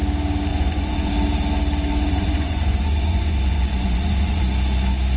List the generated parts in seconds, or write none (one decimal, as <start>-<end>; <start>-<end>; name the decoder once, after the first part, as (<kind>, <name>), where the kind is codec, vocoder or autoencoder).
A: 0.5-1.1 (vocoder, Vocos); 1.9-4.4